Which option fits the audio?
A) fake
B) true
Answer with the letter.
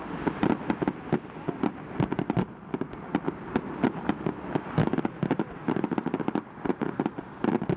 B